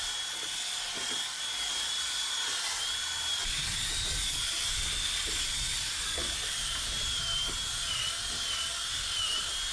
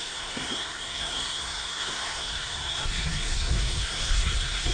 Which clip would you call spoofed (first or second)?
second